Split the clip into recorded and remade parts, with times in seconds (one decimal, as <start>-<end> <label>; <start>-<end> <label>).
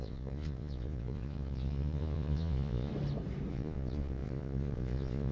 0.0-2.9 remade; 2.9-3.5 recorded; 3.5-5.3 remade